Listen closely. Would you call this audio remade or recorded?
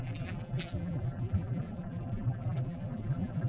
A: remade